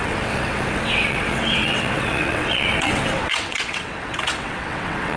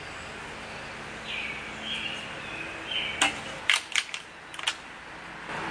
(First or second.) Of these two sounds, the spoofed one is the first